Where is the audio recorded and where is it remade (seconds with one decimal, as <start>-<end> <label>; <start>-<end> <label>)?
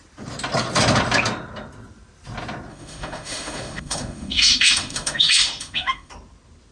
0.0-2.7 recorded; 2.7-6.1 remade; 6.1-6.7 recorded